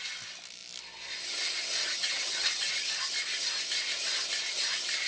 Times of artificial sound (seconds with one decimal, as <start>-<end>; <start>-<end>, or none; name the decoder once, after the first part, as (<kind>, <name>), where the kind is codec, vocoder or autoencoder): 1.8-2.7 (vocoder, HiFi-GAN)